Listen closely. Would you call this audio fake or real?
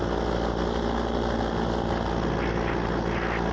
real